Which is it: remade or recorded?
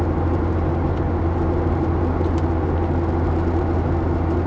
recorded